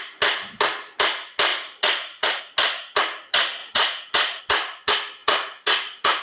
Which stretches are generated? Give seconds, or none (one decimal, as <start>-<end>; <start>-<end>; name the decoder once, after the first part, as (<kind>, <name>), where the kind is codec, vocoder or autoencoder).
1.5-2.4 (vocoder, Vocos); 3.6-4.4; 5.2-6.2